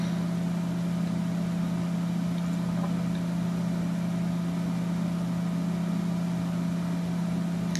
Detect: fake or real real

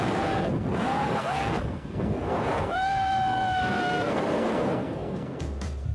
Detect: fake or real fake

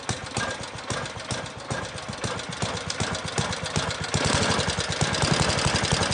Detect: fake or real real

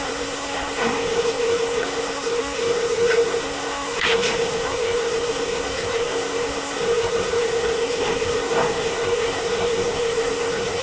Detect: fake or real fake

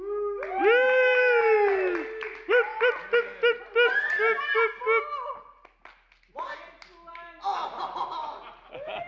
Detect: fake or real real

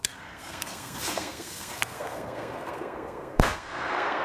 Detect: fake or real fake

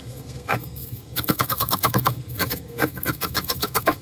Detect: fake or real fake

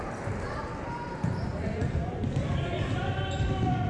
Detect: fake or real real